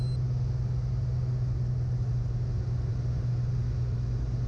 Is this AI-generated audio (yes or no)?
no